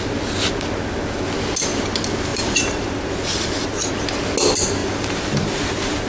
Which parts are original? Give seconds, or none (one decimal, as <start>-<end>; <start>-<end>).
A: 0.0-2.3; 3.9-4.8